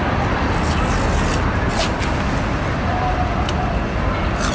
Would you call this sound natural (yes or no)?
yes